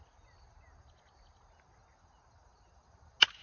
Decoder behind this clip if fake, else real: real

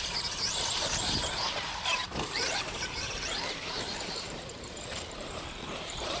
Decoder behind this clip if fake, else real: fake, vocoder, BigVGAN v2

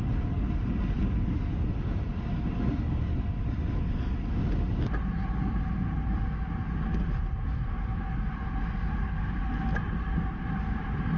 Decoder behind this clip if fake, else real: real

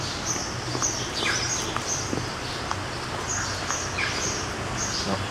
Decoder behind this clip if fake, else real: real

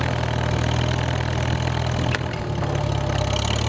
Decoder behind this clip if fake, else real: real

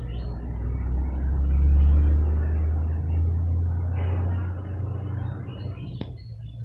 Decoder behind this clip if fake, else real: real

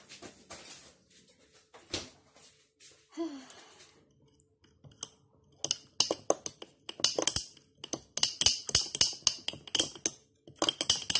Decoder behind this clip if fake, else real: real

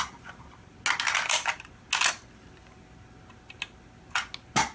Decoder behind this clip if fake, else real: real